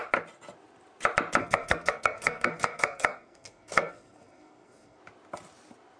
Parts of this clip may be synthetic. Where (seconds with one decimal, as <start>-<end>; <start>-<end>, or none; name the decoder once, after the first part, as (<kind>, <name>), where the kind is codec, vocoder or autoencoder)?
1.4-5.0 (codec, SNAC)